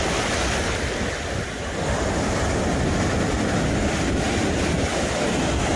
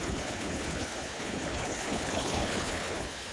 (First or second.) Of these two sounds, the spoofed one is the second